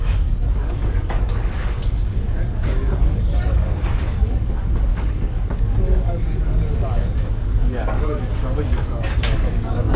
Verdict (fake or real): fake